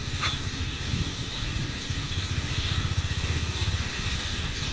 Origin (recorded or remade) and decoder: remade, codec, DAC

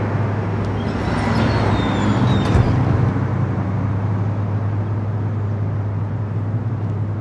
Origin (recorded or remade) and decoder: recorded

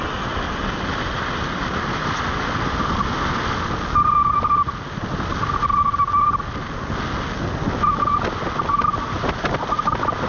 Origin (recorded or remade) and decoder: recorded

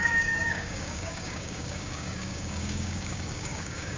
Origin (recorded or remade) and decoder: remade, codec, DAC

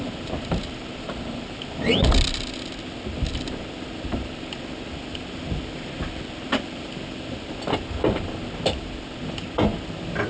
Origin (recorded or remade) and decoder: recorded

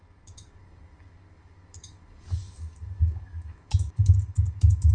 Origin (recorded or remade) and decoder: remade, codec, DAC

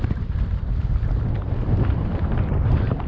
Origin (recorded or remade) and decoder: recorded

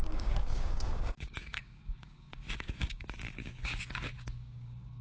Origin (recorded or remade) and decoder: remade, codec, DAC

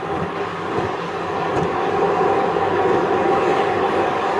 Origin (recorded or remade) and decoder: remade, codec, DAC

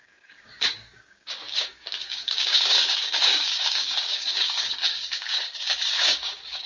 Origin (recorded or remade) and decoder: remade, codec, DAC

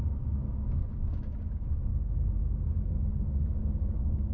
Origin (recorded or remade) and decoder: remade, codec, DAC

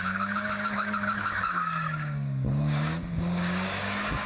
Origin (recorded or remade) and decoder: remade, codec, DAC